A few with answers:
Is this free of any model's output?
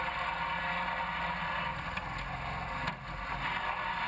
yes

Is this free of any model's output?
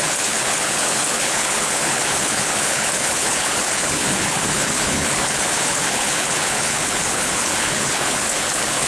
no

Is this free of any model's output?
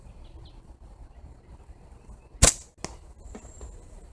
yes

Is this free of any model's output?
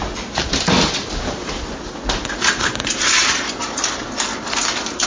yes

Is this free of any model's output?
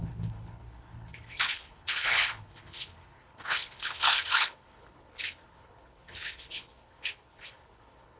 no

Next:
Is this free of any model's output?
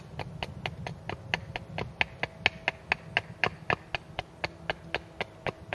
yes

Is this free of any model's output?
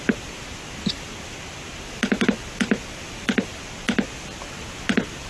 yes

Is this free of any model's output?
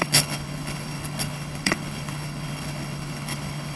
no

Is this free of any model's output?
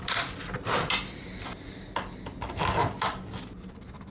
yes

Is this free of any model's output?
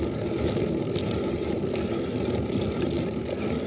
yes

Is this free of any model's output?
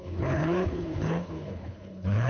no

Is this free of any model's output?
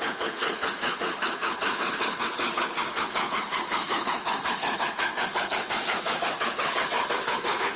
no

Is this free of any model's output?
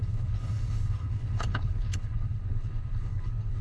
no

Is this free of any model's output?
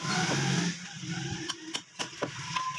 yes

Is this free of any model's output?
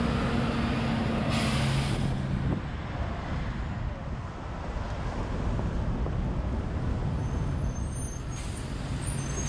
yes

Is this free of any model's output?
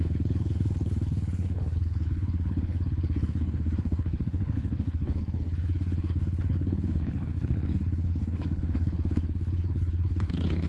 no